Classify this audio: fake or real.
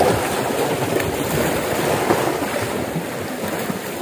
real